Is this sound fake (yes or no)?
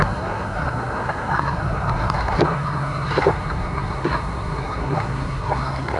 yes